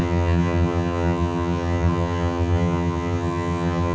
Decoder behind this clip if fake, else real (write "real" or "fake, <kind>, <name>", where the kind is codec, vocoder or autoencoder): fake, vocoder, HiFi-GAN